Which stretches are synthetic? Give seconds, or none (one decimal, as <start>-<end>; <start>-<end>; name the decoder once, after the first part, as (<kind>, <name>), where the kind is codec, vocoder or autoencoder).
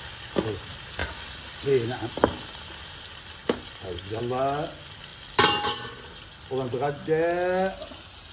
1.0-2.0 (vocoder, BigVGAN v2); 3.4-4.2; 5.1-5.9